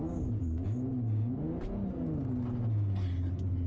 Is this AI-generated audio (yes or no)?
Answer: no